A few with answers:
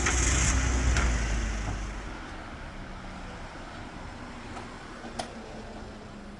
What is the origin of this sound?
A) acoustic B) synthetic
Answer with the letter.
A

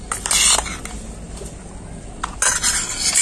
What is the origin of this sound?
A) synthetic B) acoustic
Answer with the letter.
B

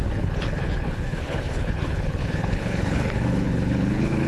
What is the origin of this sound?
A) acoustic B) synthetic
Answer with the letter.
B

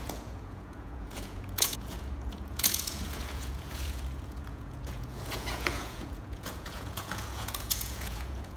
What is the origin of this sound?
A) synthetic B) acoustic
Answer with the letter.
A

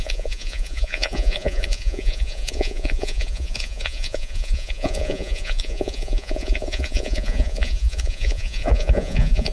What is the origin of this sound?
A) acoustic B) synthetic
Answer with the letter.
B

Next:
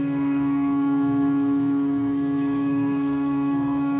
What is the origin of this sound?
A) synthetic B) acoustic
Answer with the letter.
A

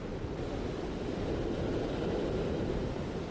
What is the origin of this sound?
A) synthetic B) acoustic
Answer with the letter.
B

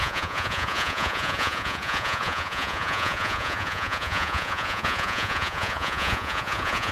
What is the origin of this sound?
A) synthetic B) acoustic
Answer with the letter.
A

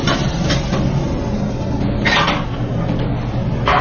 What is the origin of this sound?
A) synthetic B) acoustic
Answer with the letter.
B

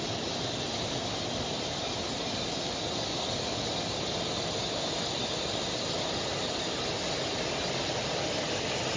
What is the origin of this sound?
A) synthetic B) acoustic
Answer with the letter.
B